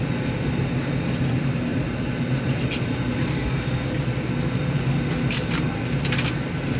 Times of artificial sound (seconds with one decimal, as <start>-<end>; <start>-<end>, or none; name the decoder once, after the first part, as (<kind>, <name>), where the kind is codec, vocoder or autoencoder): none

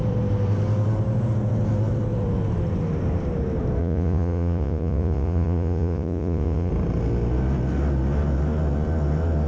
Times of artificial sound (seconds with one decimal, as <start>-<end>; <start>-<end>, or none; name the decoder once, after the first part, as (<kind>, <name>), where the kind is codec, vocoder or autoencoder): 3.8-6.7 (vocoder, Vocos)

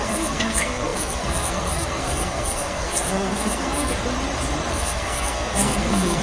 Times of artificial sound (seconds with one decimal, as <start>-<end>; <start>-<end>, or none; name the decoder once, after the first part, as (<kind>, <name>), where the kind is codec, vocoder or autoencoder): 0.0-4.0 (codec, SNAC); 4.7-6.2

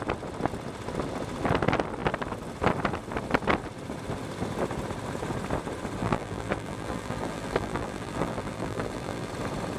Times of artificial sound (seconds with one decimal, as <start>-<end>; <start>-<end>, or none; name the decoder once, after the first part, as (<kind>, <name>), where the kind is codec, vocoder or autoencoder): 6.0-9.3 (vocoder, BigVGAN v2)

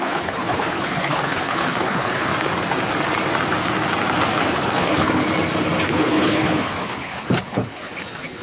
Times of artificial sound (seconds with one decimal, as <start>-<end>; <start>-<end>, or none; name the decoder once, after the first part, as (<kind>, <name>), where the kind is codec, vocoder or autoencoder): 0.0-2.3 (codec, HILCodec); 4.4-5.2; 5.9-8.4

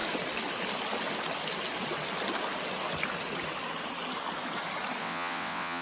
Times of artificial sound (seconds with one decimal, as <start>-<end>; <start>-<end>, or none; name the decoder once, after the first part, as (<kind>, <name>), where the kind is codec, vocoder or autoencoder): 5.0-5.8 (vocoder, WaveNeXt)

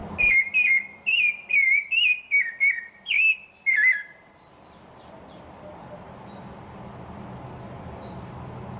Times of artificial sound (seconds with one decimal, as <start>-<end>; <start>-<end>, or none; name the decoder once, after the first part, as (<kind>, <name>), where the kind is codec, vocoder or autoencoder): 0.0-8.8 (vocoder, BigVGAN v2)

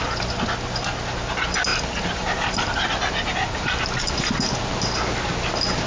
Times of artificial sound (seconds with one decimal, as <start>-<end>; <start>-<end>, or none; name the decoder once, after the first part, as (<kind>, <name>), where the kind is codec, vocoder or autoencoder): none